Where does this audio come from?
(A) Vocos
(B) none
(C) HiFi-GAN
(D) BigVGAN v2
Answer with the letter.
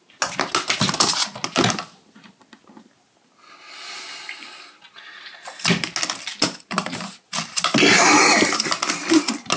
B